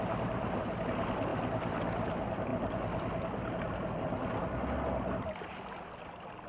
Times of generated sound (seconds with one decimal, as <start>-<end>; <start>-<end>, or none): none